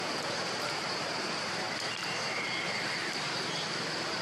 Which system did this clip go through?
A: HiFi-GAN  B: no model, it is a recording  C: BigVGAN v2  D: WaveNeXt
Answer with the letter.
C